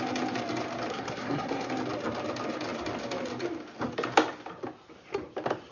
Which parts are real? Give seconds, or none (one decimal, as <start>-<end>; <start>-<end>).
0.0-0.9; 1.7-5.7